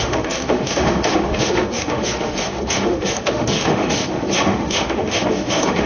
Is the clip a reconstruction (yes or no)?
yes